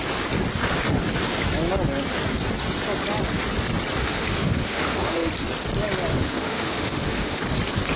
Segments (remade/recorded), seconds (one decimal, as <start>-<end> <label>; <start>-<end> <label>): 0.0-4.0 recorded; 4.0-5.3 remade; 5.3-6.1 recorded; 6.1-7.4 remade; 7.4-8.0 recorded

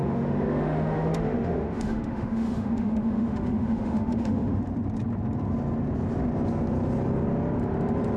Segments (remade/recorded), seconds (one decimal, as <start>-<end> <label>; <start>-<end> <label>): 0.0-4.6 remade; 4.6-8.2 recorded

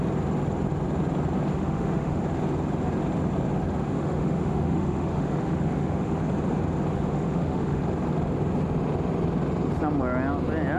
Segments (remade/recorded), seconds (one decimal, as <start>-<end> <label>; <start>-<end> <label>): 0.0-1.5 recorded; 1.5-2.2 remade; 2.2-3.8 recorded; 3.8-6.2 remade; 6.2-6.9 recorded; 6.9-7.8 remade; 7.8-10.8 recorded

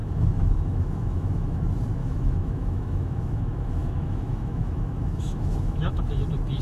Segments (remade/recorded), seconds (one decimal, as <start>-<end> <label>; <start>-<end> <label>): 0.0-1.6 remade; 1.6-2.0 recorded; 2.0-6.0 remade; 6.0-6.6 recorded

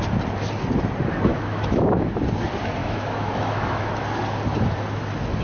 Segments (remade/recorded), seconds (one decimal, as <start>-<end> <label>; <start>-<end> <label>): 0.0-1.3 recorded; 1.3-2.1 remade; 2.1-2.8 recorded; 2.8-3.9 remade; 3.9-5.4 recorded